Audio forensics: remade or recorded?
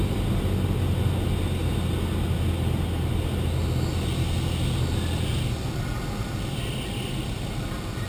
recorded